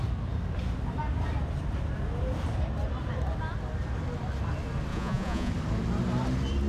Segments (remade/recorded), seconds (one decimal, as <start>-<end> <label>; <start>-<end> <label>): 0.0-4.9 recorded; 4.9-5.5 remade; 5.5-6.7 recorded